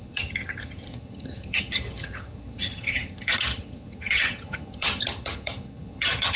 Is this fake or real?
fake